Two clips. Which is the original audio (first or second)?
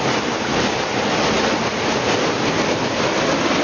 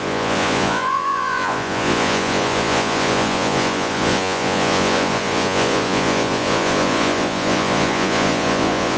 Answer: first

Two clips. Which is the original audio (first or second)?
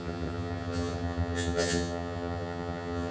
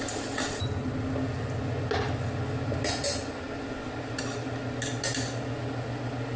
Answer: second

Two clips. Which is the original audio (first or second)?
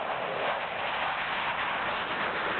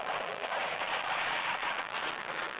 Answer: first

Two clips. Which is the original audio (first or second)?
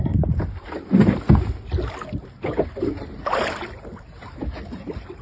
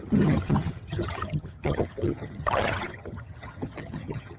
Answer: first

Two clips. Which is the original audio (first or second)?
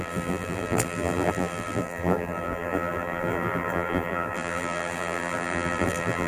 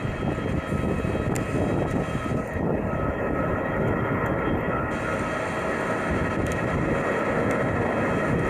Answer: second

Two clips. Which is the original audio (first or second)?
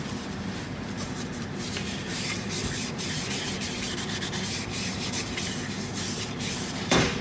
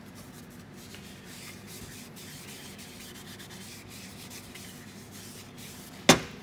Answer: second